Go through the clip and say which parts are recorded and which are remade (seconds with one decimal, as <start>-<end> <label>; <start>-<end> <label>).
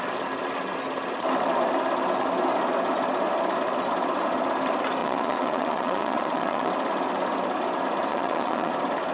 0.0-5.0 recorded; 5.0-6.7 remade; 6.7-8.1 recorded; 8.1-8.7 remade; 8.7-9.1 recorded